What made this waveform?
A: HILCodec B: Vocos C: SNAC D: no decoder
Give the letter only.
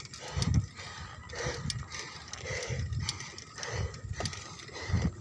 D